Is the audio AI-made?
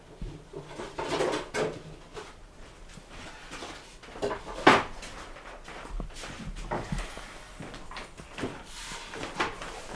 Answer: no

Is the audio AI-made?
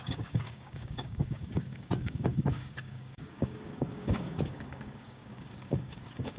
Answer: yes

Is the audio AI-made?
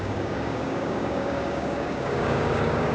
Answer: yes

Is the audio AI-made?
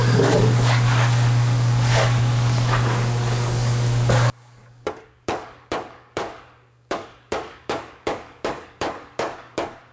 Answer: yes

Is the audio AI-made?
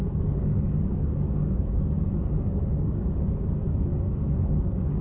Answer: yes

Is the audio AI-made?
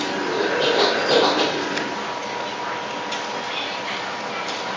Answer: no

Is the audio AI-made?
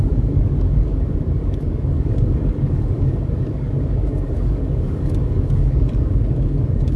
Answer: yes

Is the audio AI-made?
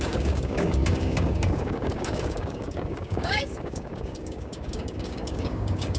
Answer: yes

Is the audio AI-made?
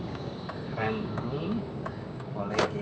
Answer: yes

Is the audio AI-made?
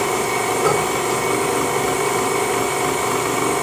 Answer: no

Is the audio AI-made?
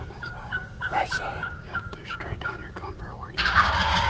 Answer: yes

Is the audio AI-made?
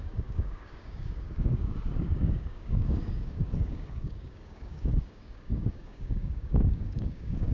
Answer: yes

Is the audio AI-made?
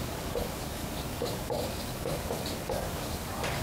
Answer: yes